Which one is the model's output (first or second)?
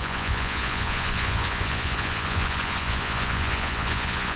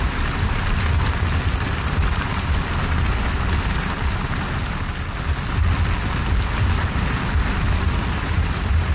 first